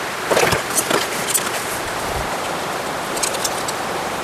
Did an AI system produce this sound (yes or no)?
no